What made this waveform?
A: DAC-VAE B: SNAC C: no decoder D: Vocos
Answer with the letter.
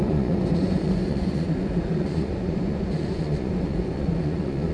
D